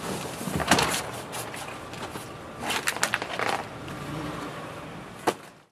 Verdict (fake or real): real